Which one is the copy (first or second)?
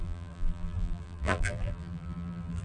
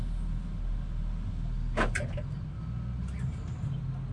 first